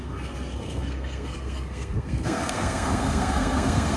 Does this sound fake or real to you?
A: fake